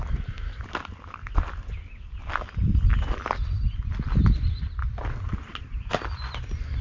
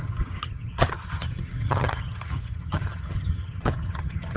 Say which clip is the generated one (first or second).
second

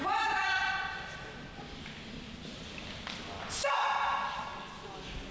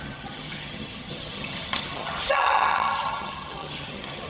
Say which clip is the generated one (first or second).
second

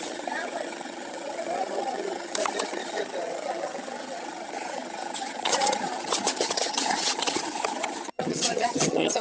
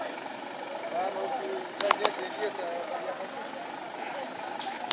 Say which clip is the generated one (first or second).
first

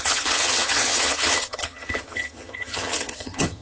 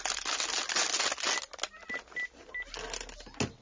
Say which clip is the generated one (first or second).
first